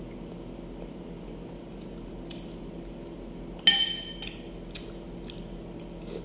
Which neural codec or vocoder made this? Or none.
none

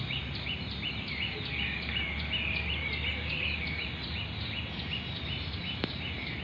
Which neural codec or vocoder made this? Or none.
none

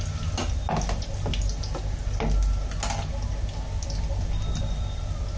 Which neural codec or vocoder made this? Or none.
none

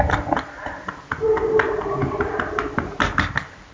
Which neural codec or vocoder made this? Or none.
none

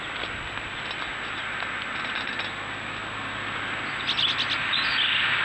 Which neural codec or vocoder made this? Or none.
none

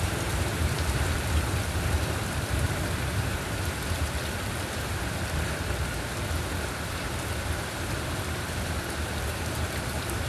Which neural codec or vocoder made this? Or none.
vocoder, BigVGAN v2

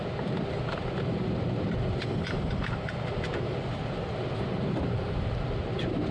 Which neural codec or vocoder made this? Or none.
vocoder, BigVGAN v2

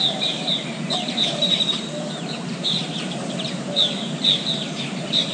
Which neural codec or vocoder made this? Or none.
vocoder, BigVGAN v2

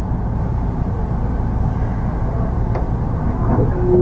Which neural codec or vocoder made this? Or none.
none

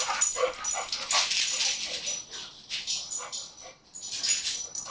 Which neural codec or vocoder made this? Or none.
none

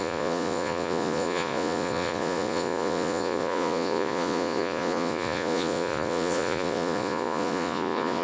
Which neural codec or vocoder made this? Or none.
vocoder, Vocos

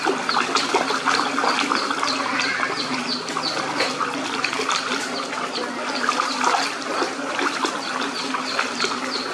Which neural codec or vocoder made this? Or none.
none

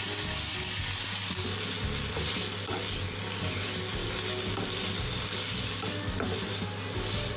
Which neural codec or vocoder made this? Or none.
none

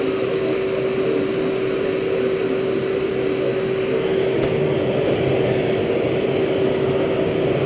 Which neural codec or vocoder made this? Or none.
none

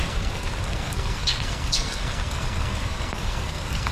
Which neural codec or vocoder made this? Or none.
codec, SNAC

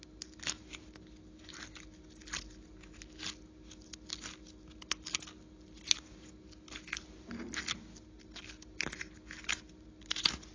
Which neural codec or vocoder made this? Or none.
none